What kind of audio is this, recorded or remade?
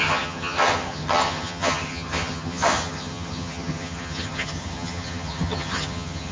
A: remade